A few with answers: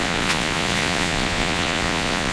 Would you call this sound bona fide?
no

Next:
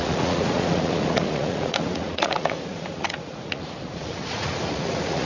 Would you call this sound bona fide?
no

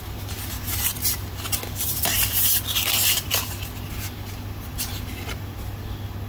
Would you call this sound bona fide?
yes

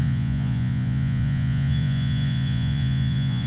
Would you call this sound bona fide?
no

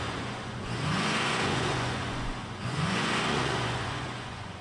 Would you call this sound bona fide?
no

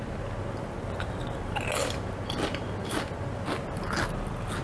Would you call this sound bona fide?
yes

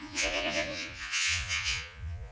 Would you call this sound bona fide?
no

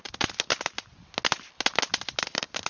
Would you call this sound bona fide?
yes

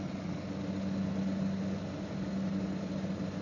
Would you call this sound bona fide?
yes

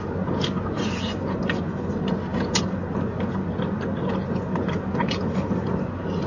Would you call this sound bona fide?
yes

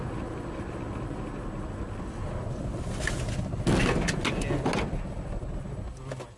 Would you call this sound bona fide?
yes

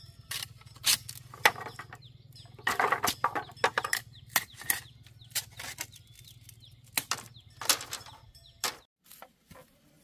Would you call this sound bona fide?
yes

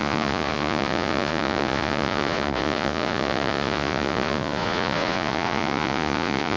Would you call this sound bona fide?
no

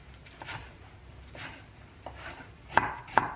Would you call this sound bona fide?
yes